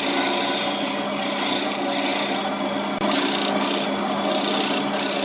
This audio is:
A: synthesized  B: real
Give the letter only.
B